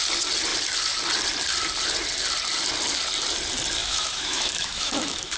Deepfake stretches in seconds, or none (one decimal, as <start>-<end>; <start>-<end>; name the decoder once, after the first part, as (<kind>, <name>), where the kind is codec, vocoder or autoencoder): 3.8-5.4 (autoencoder, DAC-VAE)